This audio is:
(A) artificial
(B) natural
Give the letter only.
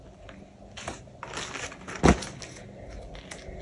B